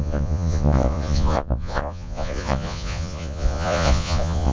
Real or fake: fake